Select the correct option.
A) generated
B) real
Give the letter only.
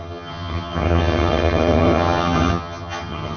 A